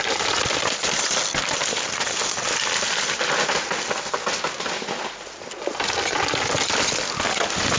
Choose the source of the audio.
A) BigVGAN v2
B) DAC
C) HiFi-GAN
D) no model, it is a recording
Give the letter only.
D